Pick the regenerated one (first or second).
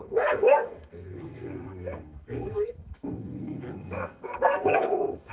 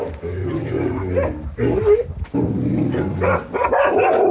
first